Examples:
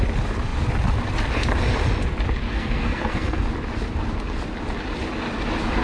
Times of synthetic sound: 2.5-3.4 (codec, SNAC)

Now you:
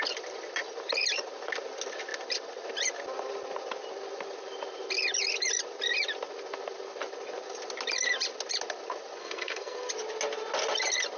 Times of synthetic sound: 9.2-9.9 (codec, SNAC)

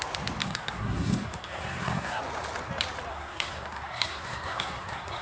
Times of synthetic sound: 0.4-2.2 (codec, SNAC); 3.1-5.2

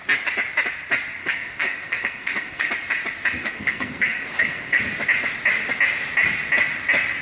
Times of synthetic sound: 1.2-2.7 (codec, SNAC); 3.4-4.8

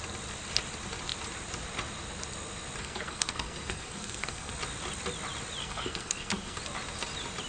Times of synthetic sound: 2.8-4.5 (codec, SNAC); 5.6-6.6

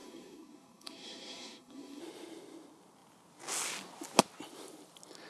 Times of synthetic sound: 0.0-2.0 (codec, SNAC)

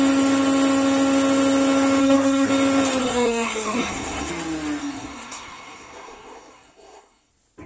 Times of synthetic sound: 2.0-2.5 (codec, SNAC); 3.0-4.3; 4.8-7.3